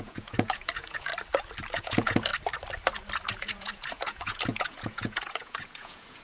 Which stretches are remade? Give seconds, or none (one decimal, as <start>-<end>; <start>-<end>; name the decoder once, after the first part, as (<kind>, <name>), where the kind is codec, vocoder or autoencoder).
0.0-1.1 (vocoder, Vocos); 1.8-2.3; 3.3-6.2